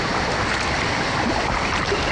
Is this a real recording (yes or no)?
no